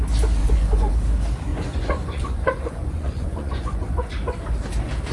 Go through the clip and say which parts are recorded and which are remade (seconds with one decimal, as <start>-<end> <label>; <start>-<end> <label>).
0.0-0.4 recorded; 0.4-0.9 remade; 0.9-1.5 recorded; 1.5-4.1 remade; 4.1-5.1 recorded